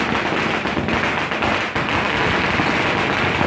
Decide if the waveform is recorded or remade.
recorded